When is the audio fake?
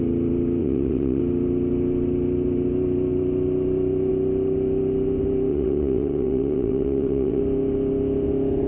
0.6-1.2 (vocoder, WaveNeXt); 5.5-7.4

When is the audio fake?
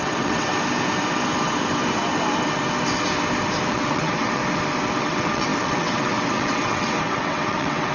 0.0-0.5 (vocoder, WaveNeXt); 3.7-4.4; 5.0-7.9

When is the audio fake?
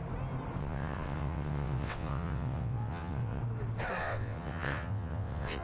0.6-3.4 (vocoder, WaveNeXt); 4.0-5.6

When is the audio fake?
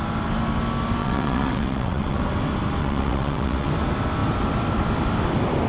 1.0-2.2 (vocoder, WaveNeXt); 2.8-3.7